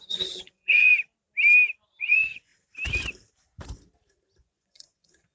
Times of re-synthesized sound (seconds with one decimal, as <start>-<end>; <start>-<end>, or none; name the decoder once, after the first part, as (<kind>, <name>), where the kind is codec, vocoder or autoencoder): 0.0-0.9 (vocoder, Vocos); 2.0-2.5; 4.4-5.3